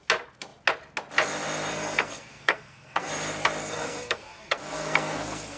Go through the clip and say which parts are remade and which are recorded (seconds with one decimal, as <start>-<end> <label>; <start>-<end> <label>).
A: 0.0-1.7 recorded; 1.7-3.1 remade; 3.1-3.6 recorded; 3.6-5.6 remade